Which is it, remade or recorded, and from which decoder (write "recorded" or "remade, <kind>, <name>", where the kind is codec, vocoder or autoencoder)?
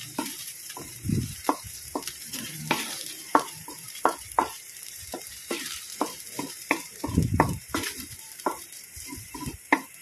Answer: remade, vocoder, BigVGAN v2